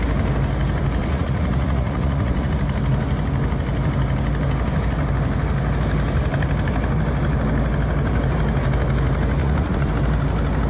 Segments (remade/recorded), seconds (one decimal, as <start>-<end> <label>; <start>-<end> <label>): 0.0-1.0 recorded; 1.0-2.5 remade; 2.5-9.4 recorded; 9.4-9.9 remade; 9.9-10.7 recorded